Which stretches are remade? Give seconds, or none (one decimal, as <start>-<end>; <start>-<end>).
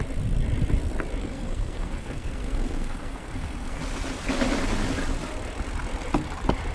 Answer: 1.2-3.8